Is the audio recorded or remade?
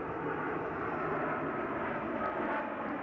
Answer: recorded